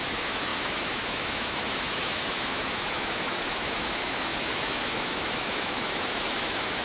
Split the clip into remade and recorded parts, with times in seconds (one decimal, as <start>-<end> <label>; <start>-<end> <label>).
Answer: 0.0-6.8 remade